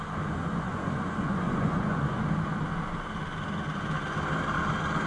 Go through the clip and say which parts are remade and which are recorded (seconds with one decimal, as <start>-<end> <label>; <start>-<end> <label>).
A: 0.0-0.4 recorded; 0.4-2.2 remade; 2.2-5.1 recorded